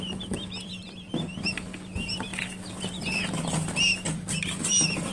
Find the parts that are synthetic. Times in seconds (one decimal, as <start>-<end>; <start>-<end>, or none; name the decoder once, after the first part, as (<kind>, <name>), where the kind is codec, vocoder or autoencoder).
0.0-5.1 (vocoder, BigVGAN v2)